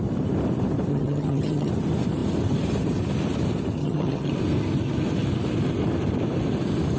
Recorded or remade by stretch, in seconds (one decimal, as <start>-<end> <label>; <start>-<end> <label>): 0.0-0.9 recorded; 0.9-1.7 remade; 1.7-3.8 recorded; 3.8-4.3 remade; 4.3-7.0 recorded